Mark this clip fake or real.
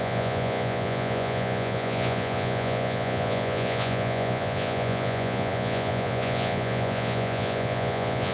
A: fake